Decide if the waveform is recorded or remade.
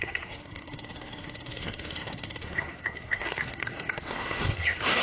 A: remade